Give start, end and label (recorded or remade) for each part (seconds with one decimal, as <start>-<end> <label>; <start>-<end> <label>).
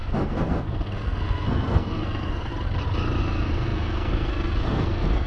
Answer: 0.0-2.5 remade; 2.5-3.2 recorded; 3.2-5.3 remade